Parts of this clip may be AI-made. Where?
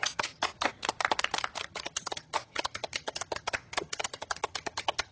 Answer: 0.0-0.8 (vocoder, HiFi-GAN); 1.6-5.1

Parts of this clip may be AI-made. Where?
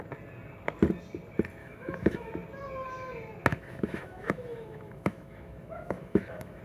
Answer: 1.6-2.3 (autoencoder, DAC-VAE); 3.5-6.6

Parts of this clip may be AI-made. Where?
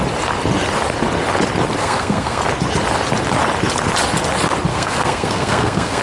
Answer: 1.8-2.4 (codec, SNAC); 4.7-6.0